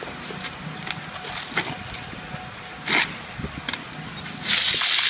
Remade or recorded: recorded